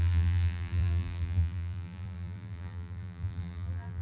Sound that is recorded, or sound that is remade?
remade